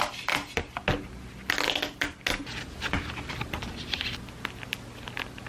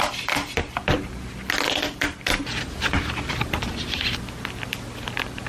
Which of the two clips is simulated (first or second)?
second